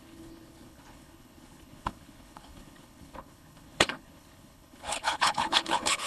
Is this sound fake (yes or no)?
yes